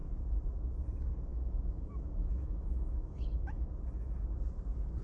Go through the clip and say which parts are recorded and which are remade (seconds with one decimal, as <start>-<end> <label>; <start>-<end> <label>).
0.0-1.3 recorded; 1.3-3.7 remade; 3.7-5.0 recorded